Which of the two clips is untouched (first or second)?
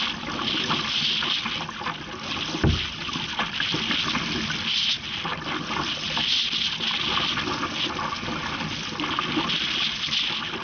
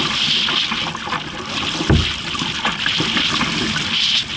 first